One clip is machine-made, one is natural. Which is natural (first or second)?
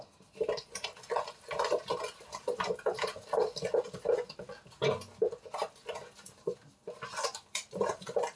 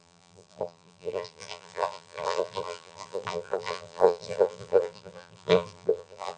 first